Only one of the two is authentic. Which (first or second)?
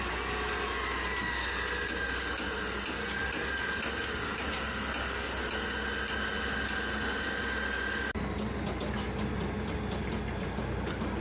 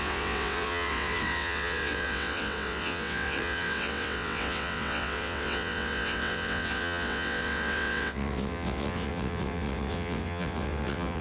first